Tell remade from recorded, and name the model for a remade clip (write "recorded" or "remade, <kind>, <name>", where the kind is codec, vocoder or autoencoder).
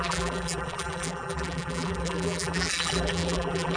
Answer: remade, vocoder, BigVGAN v2